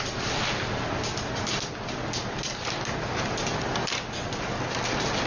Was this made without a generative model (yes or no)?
yes